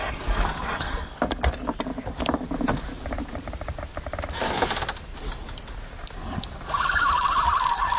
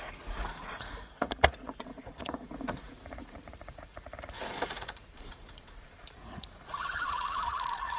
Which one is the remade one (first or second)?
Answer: second